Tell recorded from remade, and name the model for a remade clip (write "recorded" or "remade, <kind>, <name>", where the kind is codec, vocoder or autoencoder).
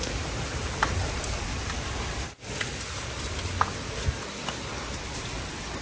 recorded